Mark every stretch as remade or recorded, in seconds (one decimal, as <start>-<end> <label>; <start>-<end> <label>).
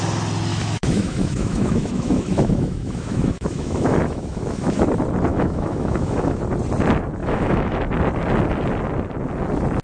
0.0-0.5 recorded; 0.5-4.8 remade; 4.8-5.3 recorded; 5.3-6.4 remade; 6.4-7.2 recorded; 7.2-7.8 remade; 7.8-9.8 recorded